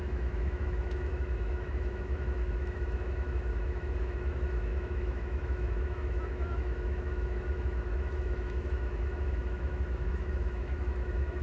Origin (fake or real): fake